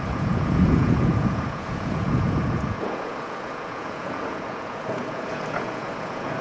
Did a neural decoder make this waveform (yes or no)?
yes